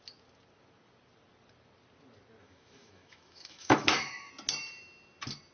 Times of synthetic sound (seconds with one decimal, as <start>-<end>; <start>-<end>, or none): 2.4-4.3